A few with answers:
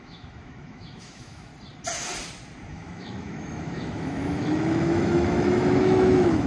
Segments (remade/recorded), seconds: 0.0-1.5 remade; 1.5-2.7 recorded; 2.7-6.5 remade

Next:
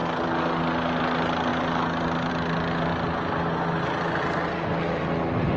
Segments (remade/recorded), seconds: 0.0-5.6 recorded

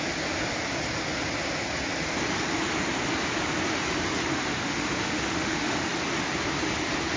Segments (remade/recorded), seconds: 0.0-4.3 recorded; 4.3-5.9 remade; 5.9-7.2 recorded

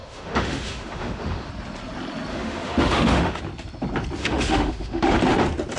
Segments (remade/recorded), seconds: 0.0-1.5 remade; 1.5-2.3 recorded; 2.3-3.4 remade; 3.4-4.2 recorded; 4.2-5.2 remade; 5.2-5.8 recorded

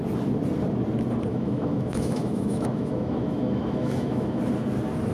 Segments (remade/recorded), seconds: 0.0-1.3 recorded; 1.3-4.4 remade; 4.4-5.1 recorded

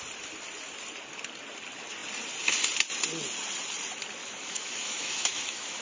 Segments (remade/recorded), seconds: 0.0-4.2 recorded; 4.2-5.8 remade

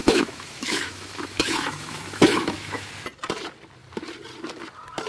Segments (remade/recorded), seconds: 0.0-2.9 remade; 2.9-5.1 recorded